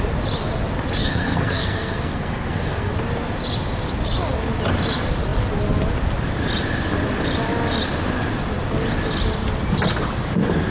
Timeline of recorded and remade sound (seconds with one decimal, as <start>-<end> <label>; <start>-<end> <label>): 0.0-1.0 recorded; 1.0-2.9 remade; 2.9-10.7 recorded